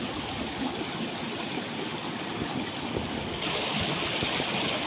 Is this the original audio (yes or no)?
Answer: yes